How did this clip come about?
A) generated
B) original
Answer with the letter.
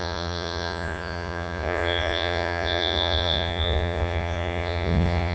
A